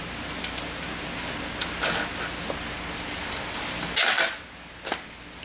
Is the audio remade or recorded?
recorded